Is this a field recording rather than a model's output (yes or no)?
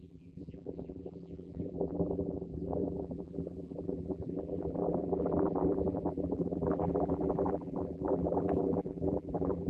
no